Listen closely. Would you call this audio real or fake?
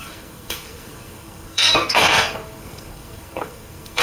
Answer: fake